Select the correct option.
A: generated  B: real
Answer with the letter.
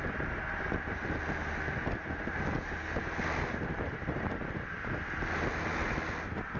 B